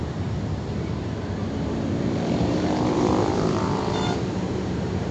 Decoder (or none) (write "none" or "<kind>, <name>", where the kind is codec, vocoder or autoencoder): vocoder, BigVGAN v2